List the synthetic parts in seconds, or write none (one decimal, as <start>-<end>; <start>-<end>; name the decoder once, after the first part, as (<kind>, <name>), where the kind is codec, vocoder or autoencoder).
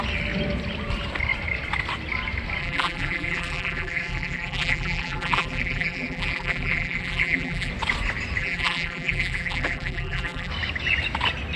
2.6-7.7 (vocoder, BigVGAN v2); 8.4-10.5